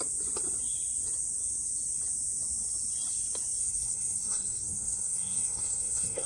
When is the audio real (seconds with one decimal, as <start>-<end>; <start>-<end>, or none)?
0.0-3.6